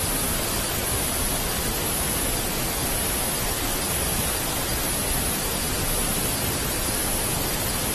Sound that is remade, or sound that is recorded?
recorded